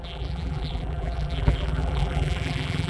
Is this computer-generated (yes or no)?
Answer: yes